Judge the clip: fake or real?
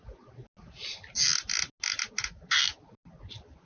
real